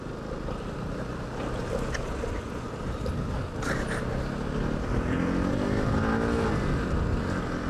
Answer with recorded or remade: recorded